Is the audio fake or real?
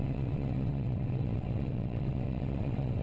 fake